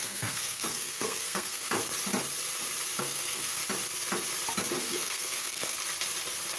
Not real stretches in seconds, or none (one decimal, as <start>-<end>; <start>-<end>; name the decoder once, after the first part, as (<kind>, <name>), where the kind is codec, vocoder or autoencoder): 0.0-1.8 (codec, SNAC); 3.0-3.6; 4.8-5.8